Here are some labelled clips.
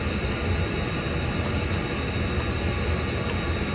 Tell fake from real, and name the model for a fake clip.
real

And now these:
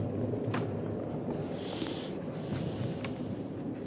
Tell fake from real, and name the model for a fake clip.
real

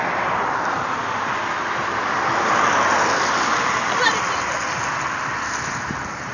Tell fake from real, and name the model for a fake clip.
real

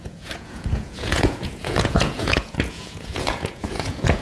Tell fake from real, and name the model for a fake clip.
fake, vocoder, Vocos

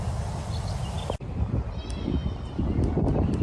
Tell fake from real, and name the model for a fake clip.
real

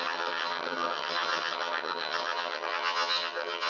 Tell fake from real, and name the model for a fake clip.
fake, vocoder, HiFi-GAN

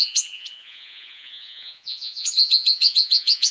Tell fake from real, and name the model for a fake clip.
fake, vocoder, Vocos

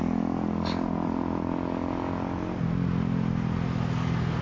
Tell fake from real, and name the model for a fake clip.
real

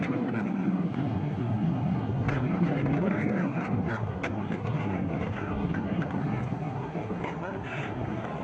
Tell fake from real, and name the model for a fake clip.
fake, codec, SNAC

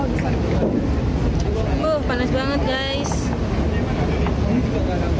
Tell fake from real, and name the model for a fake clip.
real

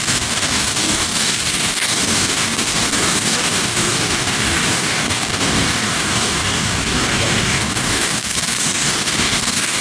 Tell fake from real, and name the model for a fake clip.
fake, codec, DAC